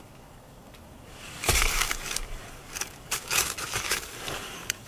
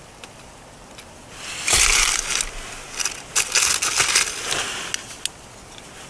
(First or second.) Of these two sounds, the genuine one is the second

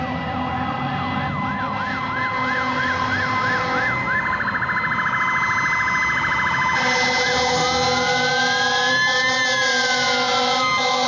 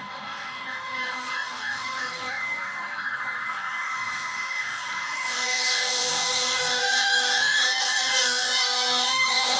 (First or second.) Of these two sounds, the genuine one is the first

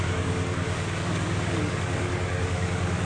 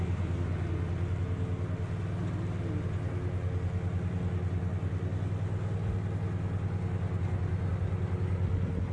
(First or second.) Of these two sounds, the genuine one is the second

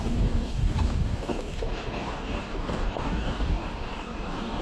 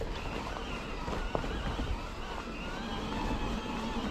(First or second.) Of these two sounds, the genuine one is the second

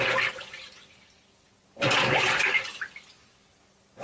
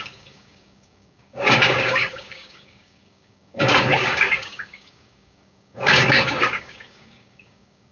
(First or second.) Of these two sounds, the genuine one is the first